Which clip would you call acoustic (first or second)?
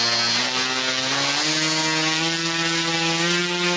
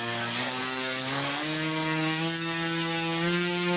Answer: first